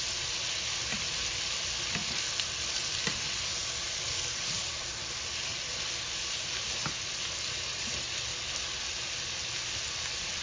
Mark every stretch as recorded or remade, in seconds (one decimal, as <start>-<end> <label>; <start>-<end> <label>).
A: 0.0-10.4 recorded